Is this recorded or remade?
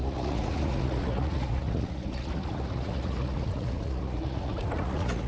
remade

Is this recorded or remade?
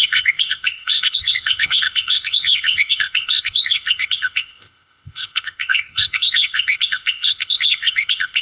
remade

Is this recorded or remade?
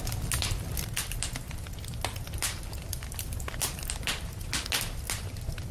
recorded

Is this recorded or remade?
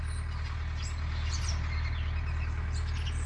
recorded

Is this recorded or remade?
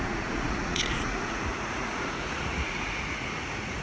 remade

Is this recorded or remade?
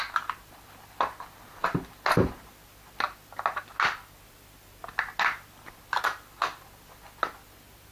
recorded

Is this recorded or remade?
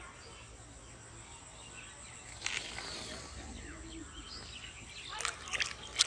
recorded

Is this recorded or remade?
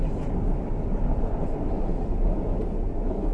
recorded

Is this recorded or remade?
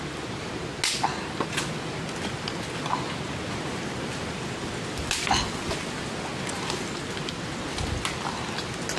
recorded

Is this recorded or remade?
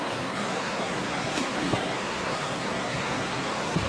remade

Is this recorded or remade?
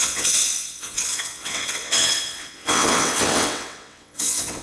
remade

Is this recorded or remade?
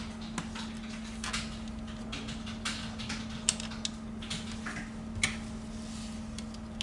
recorded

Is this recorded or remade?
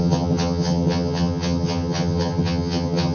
remade